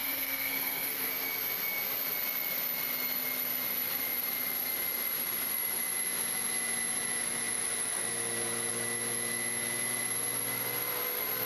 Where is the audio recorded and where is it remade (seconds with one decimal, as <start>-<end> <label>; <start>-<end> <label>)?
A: 0.0-1.1 remade; 1.1-11.5 recorded